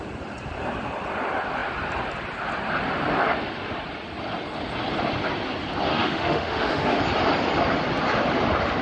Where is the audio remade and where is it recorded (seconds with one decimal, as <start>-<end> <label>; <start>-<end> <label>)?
0.0-5.9 recorded; 5.9-7.0 remade; 7.0-8.8 recorded

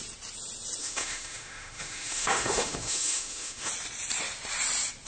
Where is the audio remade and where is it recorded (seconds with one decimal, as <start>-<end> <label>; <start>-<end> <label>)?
0.0-0.8 recorded; 0.8-3.7 remade; 3.7-5.1 recorded

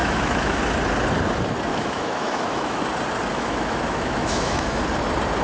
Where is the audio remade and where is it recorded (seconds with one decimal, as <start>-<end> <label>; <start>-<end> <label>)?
0.0-0.6 remade; 0.6-1.7 recorded; 1.7-2.8 remade; 2.8-3.3 recorded; 3.3-4.8 remade; 4.8-5.4 recorded

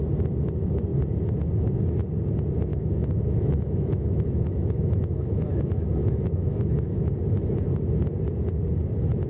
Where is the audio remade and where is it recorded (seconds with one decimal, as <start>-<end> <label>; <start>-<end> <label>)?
0.0-2.7 recorded; 2.7-7.1 remade; 7.1-9.3 recorded

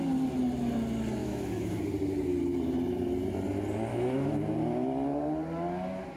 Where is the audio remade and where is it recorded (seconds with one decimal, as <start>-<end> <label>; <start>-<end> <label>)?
0.0-1.2 recorded; 1.2-1.8 remade; 1.8-3.9 recorded; 3.9-4.4 remade; 4.4-6.2 recorded

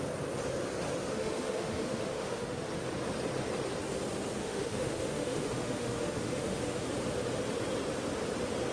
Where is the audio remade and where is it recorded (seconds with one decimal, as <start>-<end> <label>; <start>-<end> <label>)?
0.0-1.1 recorded; 1.1-2.7 remade; 2.7-4.4 recorded; 4.4-6.9 remade; 6.9-8.7 recorded

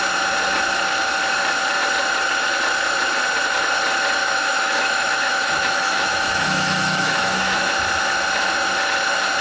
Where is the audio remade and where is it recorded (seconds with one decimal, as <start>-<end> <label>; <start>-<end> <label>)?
0.0-4.2 recorded; 4.2-7.7 remade; 7.7-9.4 recorded